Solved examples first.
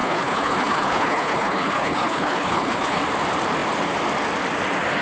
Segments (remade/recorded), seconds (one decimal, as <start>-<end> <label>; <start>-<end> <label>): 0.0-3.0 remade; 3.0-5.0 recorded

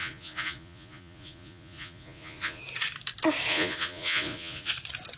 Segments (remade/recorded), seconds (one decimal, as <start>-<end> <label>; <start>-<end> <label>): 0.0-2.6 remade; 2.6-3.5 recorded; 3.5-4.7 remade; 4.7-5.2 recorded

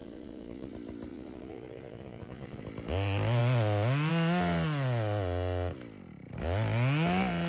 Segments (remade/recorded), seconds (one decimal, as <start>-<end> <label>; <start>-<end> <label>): 0.0-0.7 remade; 0.7-1.1 recorded; 1.1-2.6 remade; 2.6-7.5 recorded